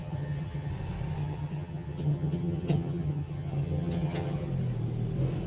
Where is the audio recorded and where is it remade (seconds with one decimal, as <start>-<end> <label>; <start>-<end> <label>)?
0.0-0.7 remade; 0.7-1.2 recorded; 1.2-4.5 remade; 4.5-5.5 recorded